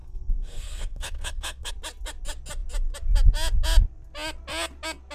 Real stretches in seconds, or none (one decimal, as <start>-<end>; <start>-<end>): 1.7-5.1